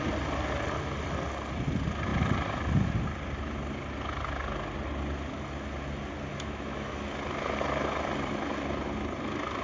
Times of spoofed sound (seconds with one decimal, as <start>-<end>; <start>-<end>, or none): 6.3-7.1